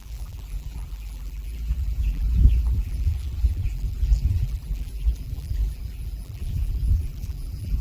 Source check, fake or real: fake